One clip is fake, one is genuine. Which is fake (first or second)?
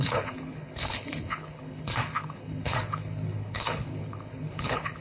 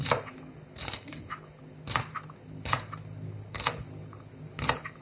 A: first